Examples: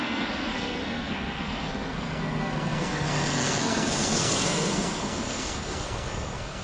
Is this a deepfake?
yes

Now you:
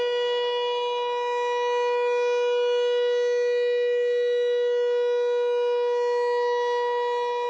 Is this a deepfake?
no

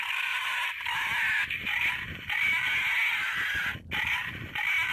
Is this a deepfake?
no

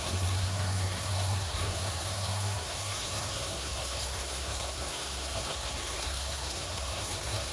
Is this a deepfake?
yes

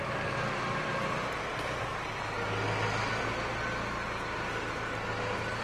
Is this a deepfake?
no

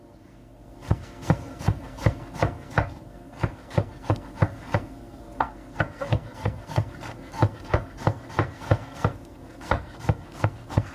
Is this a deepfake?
yes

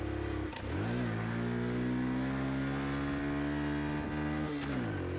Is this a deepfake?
no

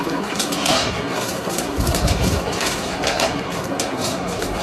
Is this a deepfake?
yes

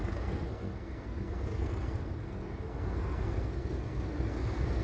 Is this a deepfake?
yes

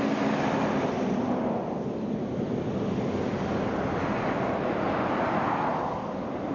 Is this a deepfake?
no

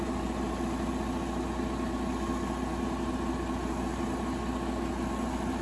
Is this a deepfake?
no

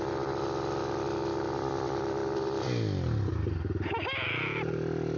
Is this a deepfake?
no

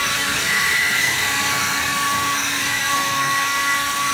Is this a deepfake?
yes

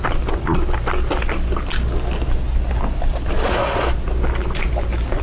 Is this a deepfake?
no